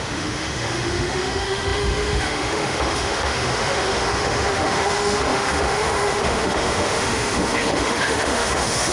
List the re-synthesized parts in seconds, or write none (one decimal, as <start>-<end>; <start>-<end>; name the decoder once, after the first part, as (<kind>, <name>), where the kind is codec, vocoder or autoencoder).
0.0-8.9 (autoencoder, DAC-VAE)

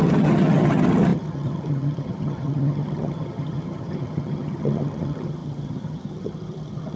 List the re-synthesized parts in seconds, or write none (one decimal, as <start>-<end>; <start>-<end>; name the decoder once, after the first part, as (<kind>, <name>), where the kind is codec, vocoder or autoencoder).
0.0-7.0 (vocoder, HiFi-GAN)

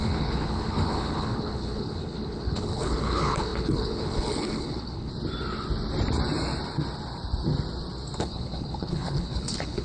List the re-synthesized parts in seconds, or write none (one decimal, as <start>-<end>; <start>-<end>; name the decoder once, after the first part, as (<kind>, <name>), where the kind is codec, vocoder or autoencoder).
0.0-5.1 (codec, HILCodec); 8.2-9.8

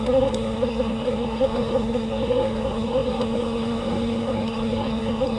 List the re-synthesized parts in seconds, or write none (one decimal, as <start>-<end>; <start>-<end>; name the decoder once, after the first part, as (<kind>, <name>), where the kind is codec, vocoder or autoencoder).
0.0-5.4 (codec, SNAC)

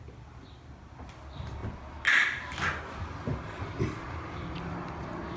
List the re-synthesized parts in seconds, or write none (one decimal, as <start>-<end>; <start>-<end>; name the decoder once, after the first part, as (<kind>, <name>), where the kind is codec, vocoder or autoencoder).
none

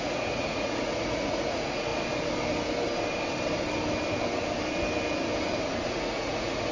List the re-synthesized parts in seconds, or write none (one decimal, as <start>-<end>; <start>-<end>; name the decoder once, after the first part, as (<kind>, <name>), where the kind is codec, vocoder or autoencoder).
0.0-1.9 (vocoder, Vocos); 5.9-6.7

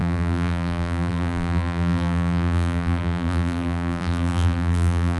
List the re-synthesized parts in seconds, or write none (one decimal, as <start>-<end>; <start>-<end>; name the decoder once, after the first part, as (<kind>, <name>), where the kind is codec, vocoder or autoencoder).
0.0-5.2 (vocoder, BigVGAN v2)